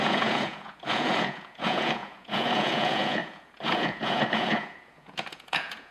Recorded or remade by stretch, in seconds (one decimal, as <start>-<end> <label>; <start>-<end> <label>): 0.0-5.9 remade